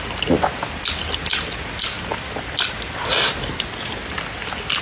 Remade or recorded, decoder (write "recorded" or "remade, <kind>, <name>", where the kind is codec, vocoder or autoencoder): recorded